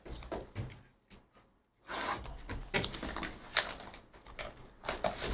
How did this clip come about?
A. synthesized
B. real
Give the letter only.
B